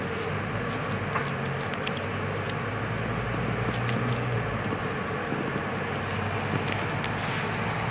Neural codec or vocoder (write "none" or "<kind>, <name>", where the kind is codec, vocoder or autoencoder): none